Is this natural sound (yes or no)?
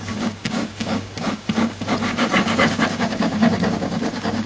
no